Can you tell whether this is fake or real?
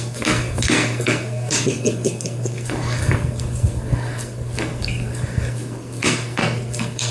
fake